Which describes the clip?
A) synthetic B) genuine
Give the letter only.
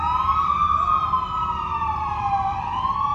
B